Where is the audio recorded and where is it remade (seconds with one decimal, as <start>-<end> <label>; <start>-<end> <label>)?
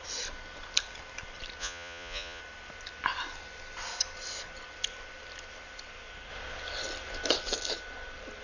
0.0-1.6 recorded; 1.6-2.4 remade; 2.4-8.4 recorded